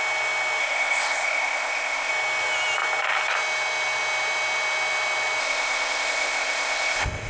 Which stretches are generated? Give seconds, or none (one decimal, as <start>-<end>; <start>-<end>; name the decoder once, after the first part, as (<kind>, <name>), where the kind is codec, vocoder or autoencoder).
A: 0.6-2.1 (codec, ZipCodec); 5.4-7.3